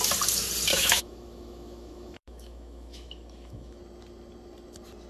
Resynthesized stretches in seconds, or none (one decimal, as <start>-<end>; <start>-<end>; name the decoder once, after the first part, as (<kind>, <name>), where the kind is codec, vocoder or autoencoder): 0.7-3.8 (autoencoder, DAC-VAE)